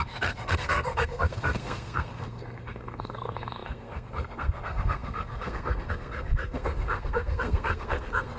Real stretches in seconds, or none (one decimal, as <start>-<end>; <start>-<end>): none